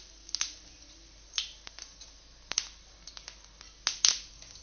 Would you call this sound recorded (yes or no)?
yes